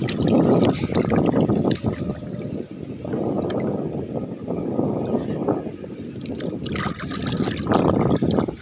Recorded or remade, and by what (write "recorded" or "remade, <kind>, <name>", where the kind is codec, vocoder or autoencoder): recorded